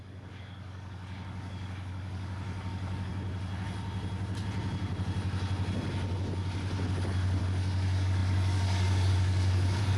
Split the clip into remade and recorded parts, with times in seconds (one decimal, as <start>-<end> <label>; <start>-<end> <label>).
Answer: 0.0-3.1 remade; 3.1-7.4 recorded; 7.4-10.0 remade